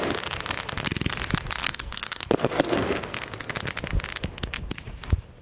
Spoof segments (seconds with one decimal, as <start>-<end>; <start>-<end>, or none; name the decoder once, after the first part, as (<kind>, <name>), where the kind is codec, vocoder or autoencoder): 1.6-3.5 (codec, SNAC)